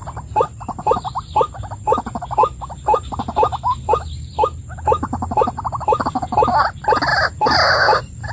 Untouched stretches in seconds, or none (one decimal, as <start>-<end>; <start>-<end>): 0.0-8.3